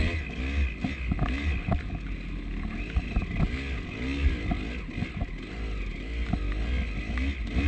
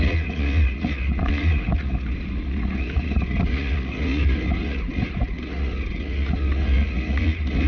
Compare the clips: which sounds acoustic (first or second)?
first